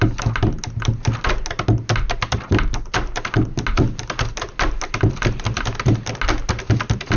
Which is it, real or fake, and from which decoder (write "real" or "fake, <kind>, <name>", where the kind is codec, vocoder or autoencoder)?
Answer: real